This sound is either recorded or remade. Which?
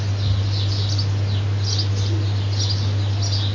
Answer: recorded